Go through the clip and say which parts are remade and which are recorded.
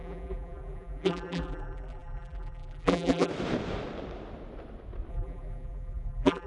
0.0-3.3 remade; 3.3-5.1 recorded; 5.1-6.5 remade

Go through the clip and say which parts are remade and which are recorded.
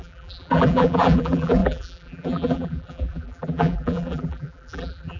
0.0-5.2 remade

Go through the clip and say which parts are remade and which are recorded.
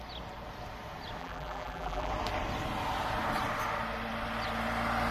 0.0-1.2 recorded; 1.2-2.1 remade; 2.1-5.1 recorded